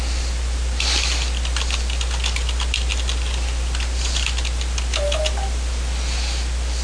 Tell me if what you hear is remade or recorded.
recorded